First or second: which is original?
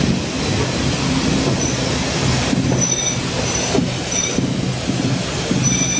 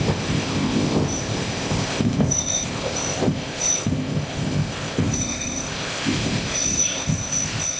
first